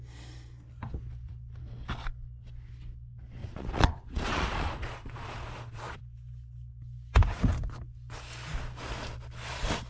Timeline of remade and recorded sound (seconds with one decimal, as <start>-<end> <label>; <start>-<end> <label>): 0.0-3.4 recorded; 3.4-6.0 remade; 6.0-9.9 recorded